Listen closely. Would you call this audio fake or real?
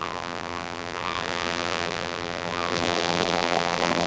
fake